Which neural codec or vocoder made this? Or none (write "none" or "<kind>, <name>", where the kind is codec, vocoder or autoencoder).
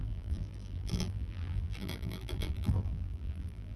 vocoder, BigVGAN v2